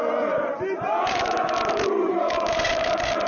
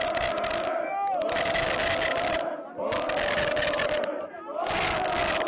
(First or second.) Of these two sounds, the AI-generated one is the first